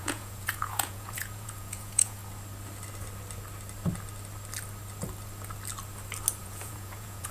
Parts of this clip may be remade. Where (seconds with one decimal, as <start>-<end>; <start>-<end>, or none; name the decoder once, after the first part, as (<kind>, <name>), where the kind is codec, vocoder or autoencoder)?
0.0-2.2 (vocoder, Vocos); 6.4-7.3